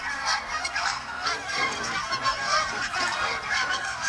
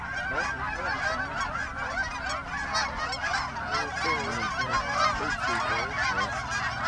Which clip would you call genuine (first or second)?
second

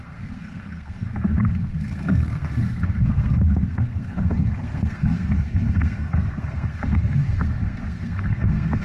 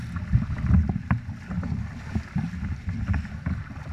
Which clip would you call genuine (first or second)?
second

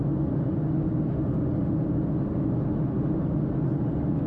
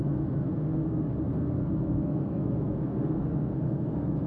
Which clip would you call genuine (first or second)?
first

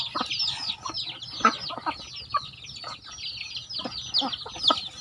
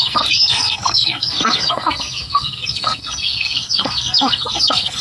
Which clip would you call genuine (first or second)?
first